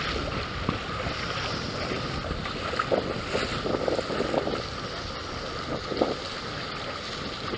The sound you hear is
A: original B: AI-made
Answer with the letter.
A